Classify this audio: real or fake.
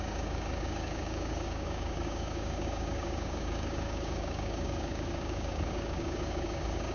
fake